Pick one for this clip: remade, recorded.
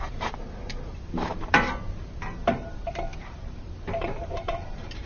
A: remade